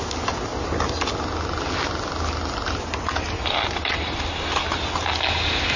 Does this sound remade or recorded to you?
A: recorded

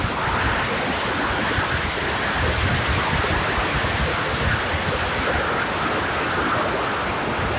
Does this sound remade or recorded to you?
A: recorded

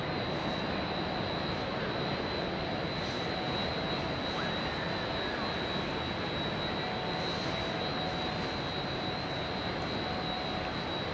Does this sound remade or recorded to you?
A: recorded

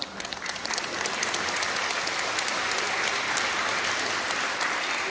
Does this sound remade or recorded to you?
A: recorded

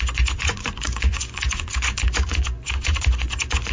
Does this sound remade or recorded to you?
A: remade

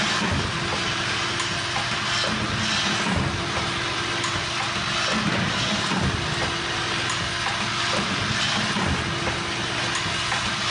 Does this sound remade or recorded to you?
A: recorded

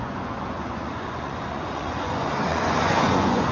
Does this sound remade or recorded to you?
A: remade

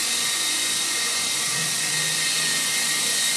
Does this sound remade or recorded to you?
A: remade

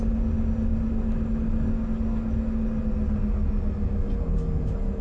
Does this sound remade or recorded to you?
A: recorded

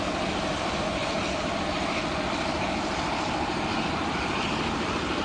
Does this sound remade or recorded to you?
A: recorded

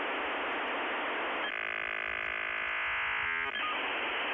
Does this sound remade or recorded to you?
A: recorded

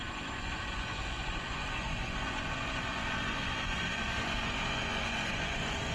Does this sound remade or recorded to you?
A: remade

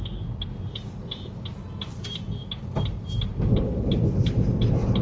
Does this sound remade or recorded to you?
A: recorded